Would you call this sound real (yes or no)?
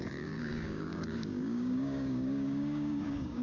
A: no